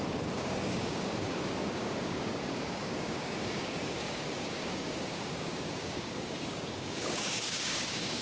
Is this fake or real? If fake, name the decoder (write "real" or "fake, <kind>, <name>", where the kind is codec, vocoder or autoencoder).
fake, codec, DAC